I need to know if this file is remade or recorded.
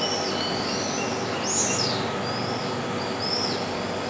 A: recorded